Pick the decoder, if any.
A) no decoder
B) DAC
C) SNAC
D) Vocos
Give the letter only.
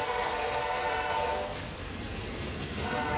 C